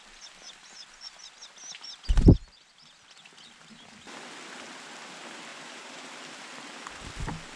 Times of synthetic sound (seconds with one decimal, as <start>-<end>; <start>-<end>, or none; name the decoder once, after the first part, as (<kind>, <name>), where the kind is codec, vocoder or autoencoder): 5.5-6.1 (vocoder, Vocos)